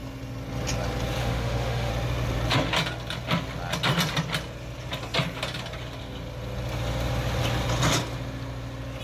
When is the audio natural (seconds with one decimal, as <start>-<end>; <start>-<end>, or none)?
0.0-1.2; 1.9-9.0